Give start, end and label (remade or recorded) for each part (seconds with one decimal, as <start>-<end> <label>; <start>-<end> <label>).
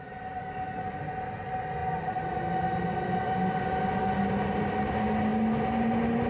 0.0-0.4 recorded; 0.4-1.0 remade; 1.0-6.3 recorded